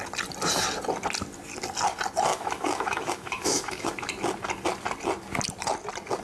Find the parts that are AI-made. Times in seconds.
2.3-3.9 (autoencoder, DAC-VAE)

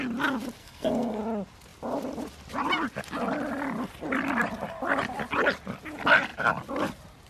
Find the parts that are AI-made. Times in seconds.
0.6-1.2 (codec, SNAC)

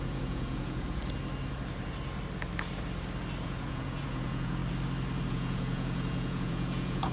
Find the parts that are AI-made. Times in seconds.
0.0-1.0 (vocoder, Vocos); 3.4-4.6; 5.3-7.1

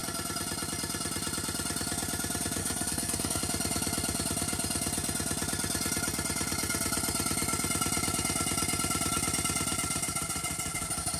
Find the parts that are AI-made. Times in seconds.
2.6-3.4 (codec, SNAC)

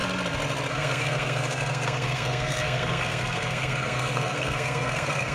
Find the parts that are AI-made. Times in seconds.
0.7-5.3 (codec, SNAC)

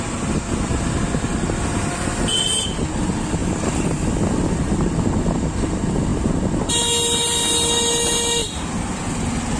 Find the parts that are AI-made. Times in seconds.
none